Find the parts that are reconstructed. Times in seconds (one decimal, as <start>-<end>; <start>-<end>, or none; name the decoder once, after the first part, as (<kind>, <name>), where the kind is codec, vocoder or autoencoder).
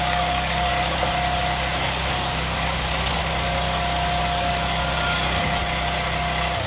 0.0-0.7 (codec, DAC); 2.1-3.2; 4.2-5.6